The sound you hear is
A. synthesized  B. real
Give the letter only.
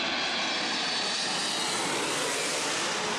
B